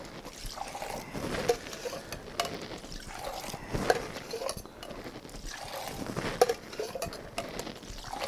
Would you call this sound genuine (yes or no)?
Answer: yes